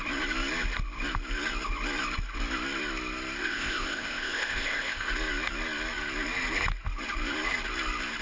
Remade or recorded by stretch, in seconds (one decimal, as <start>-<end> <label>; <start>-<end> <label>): 0.0-3.4 recorded; 3.4-5.1 remade; 5.1-8.2 recorded